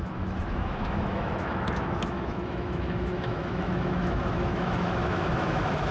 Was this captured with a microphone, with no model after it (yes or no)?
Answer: no